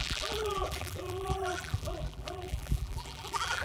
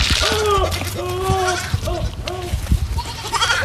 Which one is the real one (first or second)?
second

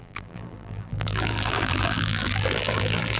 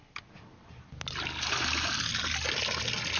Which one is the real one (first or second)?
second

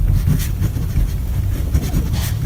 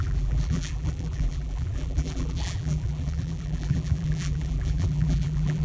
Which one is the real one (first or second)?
first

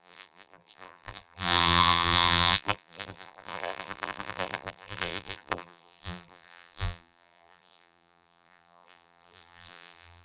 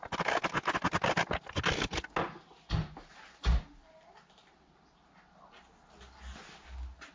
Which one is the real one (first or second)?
second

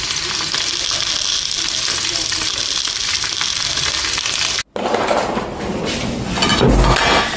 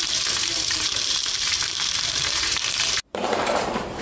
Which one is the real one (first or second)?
first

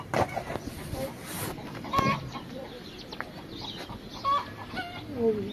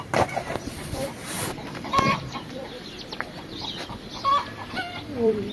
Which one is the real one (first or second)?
first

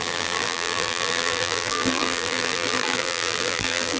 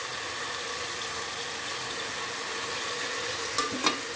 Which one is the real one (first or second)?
second